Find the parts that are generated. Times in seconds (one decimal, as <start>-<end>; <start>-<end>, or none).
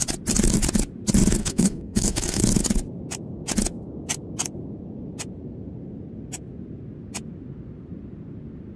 1.4-2.4